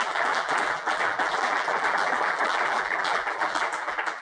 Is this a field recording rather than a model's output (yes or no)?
no